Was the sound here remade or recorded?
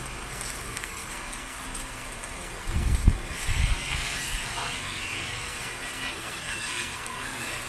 remade